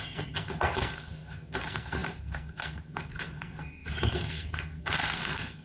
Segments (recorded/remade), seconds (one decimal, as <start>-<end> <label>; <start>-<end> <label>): 0.0-5.6 remade

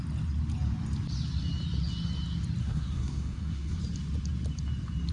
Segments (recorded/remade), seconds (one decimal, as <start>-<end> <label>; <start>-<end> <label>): 0.0-2.6 recorded; 2.6-3.8 remade; 3.8-5.1 recorded

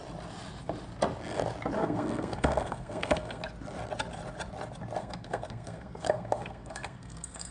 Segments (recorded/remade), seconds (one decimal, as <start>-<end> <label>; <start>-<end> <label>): 0.0-1.8 recorded; 1.8-3.4 remade; 3.4-5.0 recorded; 5.0-7.5 remade

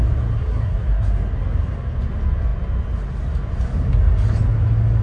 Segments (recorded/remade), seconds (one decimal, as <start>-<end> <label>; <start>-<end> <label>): 0.0-0.4 recorded; 0.4-1.1 remade; 1.1-5.0 recorded